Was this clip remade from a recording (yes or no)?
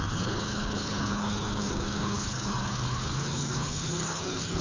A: yes